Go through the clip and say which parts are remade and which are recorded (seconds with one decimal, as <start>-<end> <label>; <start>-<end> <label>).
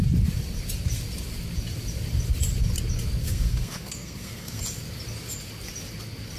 0.0-3.2 recorded; 3.2-4.6 remade; 4.6-6.4 recorded